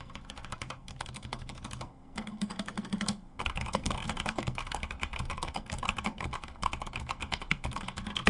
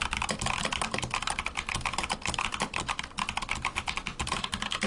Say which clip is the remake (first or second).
first